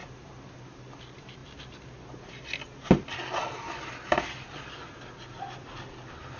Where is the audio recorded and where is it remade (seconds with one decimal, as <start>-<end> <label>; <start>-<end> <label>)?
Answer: 0.0-6.4 recorded